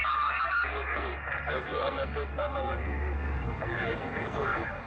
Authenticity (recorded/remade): remade